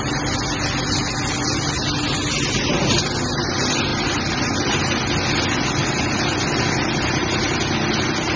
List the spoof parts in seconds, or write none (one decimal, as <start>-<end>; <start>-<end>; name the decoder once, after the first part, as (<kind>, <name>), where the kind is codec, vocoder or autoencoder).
3.9-4.8 (vocoder, BigVGAN v2); 5.8-6.6